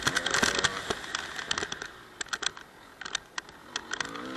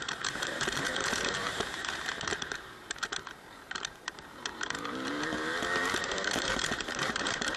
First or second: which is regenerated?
second